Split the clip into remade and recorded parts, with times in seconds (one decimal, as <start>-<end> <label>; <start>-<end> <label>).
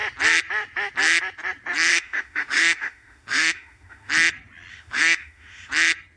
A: 0.0-1.9 recorded; 1.9-4.1 remade; 4.1-4.7 recorded; 4.7-5.7 remade; 5.7-6.2 recorded